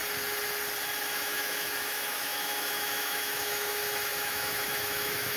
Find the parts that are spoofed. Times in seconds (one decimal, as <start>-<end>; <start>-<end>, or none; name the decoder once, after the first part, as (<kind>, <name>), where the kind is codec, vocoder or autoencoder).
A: 1.0-5.4 (autoencoder, DAC-VAE)